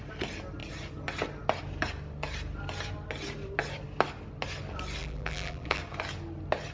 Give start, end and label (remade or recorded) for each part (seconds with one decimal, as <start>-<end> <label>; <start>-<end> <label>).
0.0-5.0 recorded; 5.0-5.8 remade; 5.8-6.7 recorded